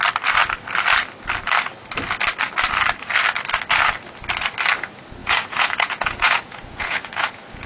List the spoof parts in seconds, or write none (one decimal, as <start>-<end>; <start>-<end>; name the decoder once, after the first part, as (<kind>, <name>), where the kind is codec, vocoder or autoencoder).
5.2-7.7 (vocoder, Vocos)